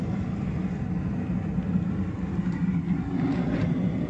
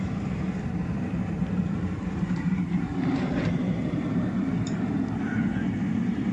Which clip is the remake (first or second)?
second